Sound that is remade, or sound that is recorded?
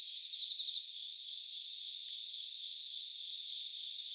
recorded